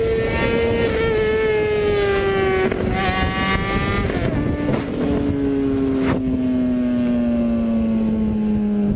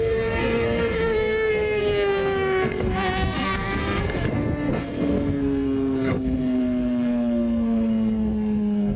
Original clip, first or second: first